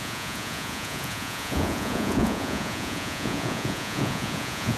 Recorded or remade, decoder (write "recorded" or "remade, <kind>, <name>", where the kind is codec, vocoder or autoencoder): remade, vocoder, Vocos